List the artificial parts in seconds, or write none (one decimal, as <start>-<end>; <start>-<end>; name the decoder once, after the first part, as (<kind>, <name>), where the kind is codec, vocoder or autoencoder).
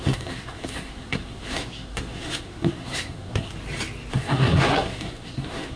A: 0.0-3.5 (codec, SNAC); 4.1-5.8